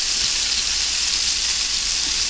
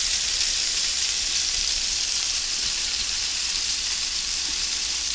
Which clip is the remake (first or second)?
second